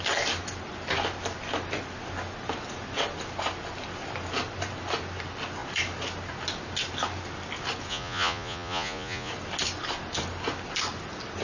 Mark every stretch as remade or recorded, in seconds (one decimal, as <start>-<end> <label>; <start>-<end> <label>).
0.0-7.9 recorded; 7.9-9.3 remade; 9.3-11.4 recorded